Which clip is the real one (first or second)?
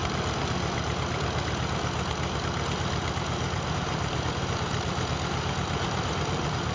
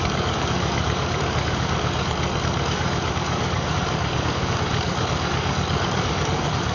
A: first